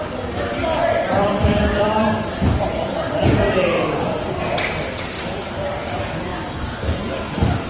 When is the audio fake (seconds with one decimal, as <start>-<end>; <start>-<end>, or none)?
0.6-4.4